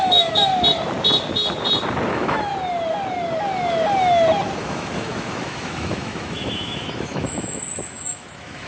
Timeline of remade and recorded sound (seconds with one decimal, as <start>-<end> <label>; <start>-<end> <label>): 0.0-0.5 remade; 0.5-2.1 recorded; 2.1-2.5 remade; 2.5-4.6 recorded; 4.6-8.7 remade